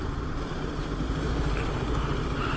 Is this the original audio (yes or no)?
no